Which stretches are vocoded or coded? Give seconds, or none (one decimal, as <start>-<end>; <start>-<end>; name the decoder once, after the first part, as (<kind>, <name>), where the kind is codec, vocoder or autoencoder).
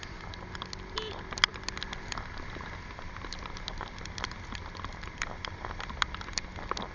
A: none